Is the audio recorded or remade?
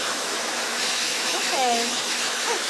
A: remade